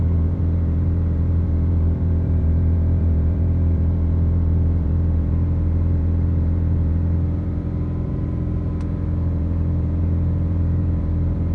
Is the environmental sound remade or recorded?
remade